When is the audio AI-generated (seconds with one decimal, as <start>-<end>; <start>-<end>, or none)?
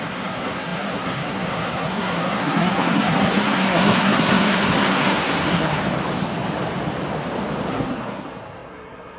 0.0-5.8; 7.7-9.2